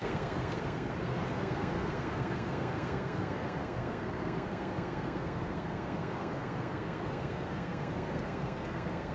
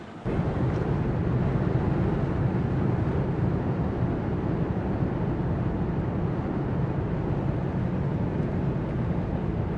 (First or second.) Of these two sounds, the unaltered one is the second